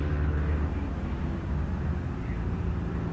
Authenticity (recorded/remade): recorded